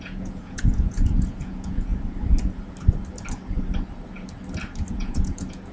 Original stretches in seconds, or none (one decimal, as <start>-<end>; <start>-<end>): 1.9-4.9